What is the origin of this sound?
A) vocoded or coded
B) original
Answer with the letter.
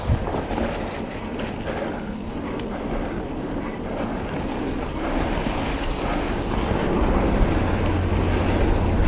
B